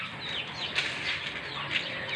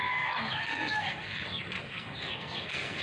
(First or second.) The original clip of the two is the first